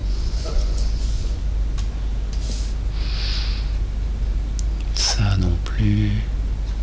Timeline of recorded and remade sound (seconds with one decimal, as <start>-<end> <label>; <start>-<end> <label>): 0.0-1.4 remade; 1.4-6.8 recorded